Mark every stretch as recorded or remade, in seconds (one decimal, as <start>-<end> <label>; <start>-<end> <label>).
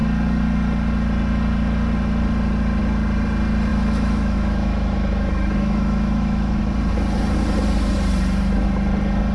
0.0-3.7 recorded; 3.7-6.6 remade; 6.6-9.3 recorded